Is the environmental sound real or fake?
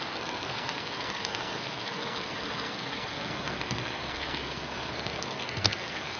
fake